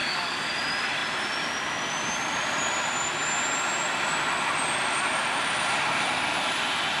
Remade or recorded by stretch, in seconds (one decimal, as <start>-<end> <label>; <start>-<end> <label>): 0.0-0.5 remade; 0.5-7.0 recorded